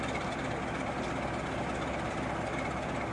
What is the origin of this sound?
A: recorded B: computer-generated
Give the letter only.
A